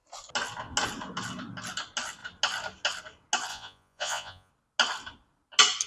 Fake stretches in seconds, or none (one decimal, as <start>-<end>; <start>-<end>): 3.5-4.5